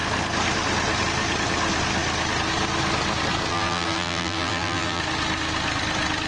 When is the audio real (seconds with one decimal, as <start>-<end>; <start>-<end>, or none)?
0.0-3.5; 5.0-6.3

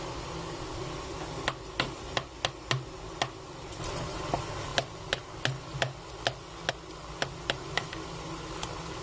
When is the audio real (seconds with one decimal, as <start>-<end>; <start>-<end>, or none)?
0.0-9.0

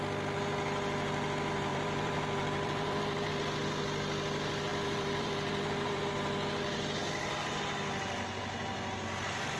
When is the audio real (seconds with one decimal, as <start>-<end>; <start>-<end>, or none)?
0.0-1.7; 3.3-4.7; 6.0-7.0; 7.5-9.6

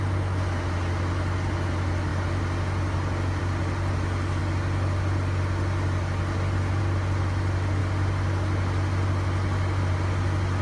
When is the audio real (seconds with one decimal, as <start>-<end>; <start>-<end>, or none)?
0.0-10.6